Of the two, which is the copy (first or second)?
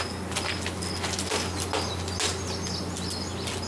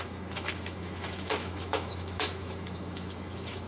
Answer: second